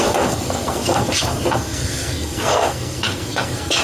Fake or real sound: fake